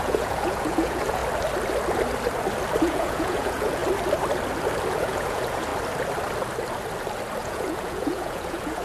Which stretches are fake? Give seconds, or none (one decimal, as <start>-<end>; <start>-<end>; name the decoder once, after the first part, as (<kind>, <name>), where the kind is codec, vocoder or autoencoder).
0.0-1.2 (vocoder, Vocos); 2.8-3.8; 4.9-5.7; 7.4-8.8